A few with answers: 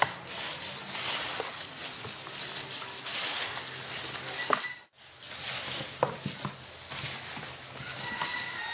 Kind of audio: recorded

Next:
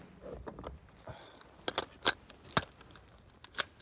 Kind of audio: recorded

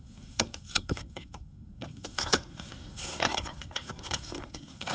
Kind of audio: remade